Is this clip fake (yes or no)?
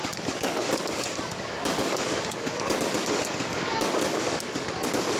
yes